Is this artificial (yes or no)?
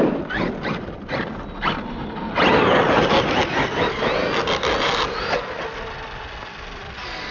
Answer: no